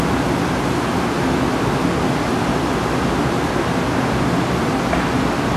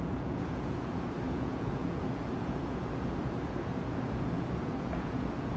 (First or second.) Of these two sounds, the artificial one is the second